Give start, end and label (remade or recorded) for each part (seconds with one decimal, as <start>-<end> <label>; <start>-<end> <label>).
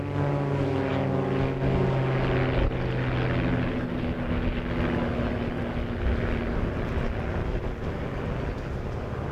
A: 0.0-9.3 recorded